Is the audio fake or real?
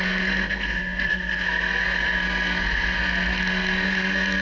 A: fake